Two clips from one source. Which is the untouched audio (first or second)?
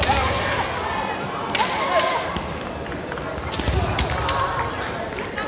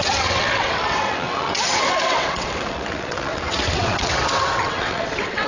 first